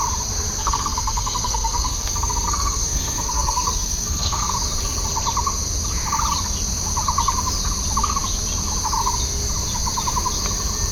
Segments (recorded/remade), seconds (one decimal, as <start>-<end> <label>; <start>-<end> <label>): 0.0-0.6 recorded; 0.6-4.5 remade; 4.5-10.9 recorded